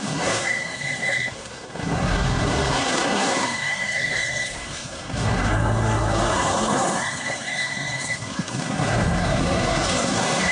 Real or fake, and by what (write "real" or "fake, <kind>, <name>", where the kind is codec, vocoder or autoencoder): fake, codec, SNAC